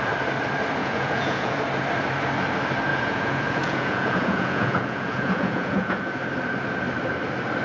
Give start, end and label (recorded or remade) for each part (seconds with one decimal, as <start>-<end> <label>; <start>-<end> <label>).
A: 0.0-0.8 recorded; 0.8-1.6 remade; 1.6-2.9 recorded; 2.9-6.2 remade; 6.2-7.6 recorded